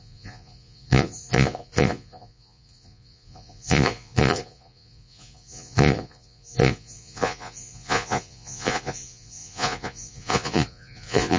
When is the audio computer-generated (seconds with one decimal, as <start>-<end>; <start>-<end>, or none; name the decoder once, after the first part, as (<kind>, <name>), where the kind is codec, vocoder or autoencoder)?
0.0-11.4 (vocoder, Vocos)